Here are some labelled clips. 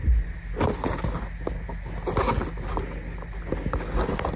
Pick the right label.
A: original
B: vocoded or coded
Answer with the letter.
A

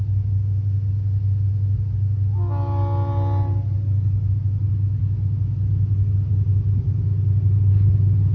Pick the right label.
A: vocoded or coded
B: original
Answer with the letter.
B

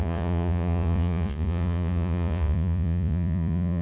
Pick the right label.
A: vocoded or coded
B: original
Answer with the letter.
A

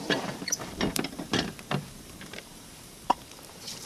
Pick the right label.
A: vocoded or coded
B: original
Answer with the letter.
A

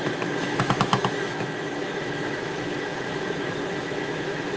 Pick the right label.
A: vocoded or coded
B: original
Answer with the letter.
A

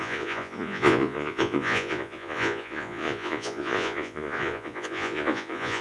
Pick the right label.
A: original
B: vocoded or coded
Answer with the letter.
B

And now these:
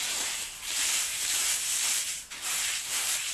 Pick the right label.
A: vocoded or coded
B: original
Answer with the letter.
A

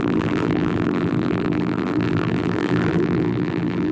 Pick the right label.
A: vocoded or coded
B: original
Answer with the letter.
A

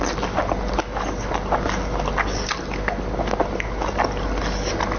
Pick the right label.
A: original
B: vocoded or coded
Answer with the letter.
A